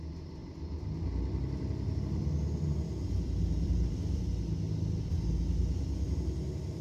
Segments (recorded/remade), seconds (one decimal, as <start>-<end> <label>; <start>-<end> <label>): 0.0-0.4 recorded; 0.4-4.3 remade; 4.3-6.8 recorded